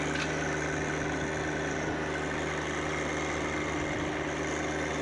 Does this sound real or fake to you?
real